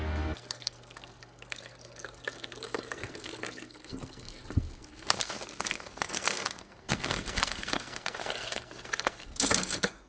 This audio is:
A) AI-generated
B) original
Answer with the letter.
A